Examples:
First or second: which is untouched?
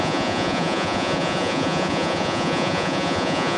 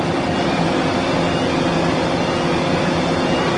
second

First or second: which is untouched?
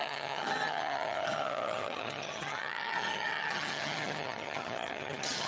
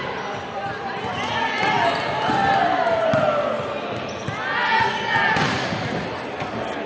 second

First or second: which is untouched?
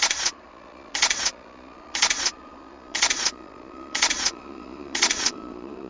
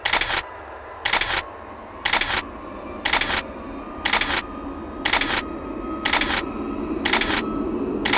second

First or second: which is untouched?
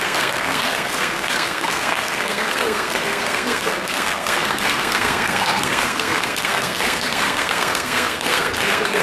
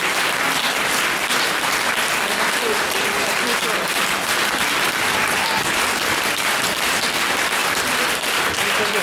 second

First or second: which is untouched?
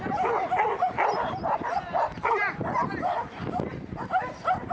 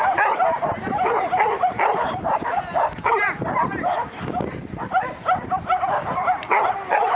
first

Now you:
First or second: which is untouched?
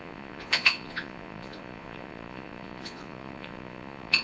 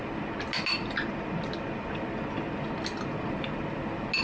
second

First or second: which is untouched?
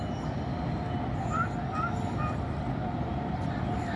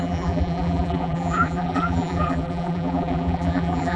first